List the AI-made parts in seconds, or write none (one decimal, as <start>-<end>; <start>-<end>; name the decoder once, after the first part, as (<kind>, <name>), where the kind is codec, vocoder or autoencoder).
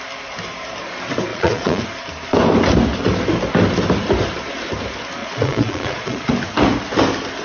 1.3-1.8 (vocoder, Vocos); 5.2-6.3